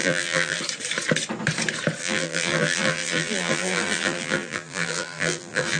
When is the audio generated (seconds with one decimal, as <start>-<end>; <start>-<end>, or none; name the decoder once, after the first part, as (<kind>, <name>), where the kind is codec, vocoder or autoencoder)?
0.0-0.6 (vocoder, BigVGAN v2); 2.0-5.8